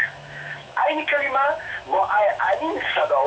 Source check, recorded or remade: remade